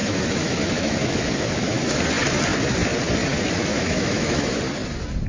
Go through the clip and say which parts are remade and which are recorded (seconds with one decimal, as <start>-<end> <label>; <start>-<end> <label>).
0.0-2.0 remade; 2.0-3.7 recorded; 3.7-4.6 remade; 4.6-5.3 recorded

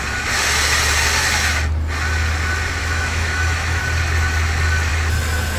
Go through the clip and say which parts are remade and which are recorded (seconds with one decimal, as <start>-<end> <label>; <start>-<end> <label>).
0.0-2.8 recorded; 2.8-3.8 remade; 3.8-5.6 recorded

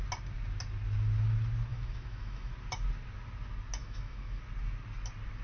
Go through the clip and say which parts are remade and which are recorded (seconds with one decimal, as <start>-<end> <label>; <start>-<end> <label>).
0.0-1.7 recorded; 1.7-2.5 remade; 2.5-3.8 recorded; 3.8-4.4 remade; 4.4-5.4 recorded

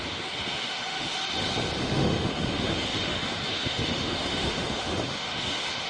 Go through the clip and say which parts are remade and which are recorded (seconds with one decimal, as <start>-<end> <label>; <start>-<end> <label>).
0.0-1.2 remade; 1.2-1.8 recorded; 1.8-5.9 remade

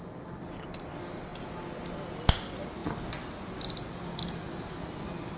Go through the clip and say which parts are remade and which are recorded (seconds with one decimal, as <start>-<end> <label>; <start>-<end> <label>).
0.0-5.4 recorded